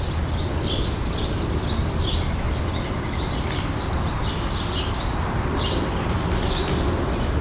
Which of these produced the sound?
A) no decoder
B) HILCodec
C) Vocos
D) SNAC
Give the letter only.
A